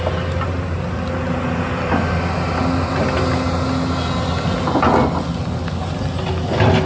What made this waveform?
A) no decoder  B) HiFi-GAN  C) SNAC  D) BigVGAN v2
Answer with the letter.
A